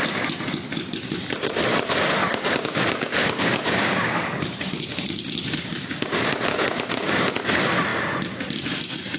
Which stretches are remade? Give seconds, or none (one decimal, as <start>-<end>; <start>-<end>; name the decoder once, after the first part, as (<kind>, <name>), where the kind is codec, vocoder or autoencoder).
2.2-7.3 (codec, DAC)